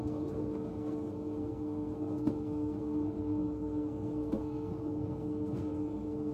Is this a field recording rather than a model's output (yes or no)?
no